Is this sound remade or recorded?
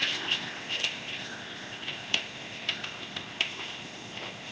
remade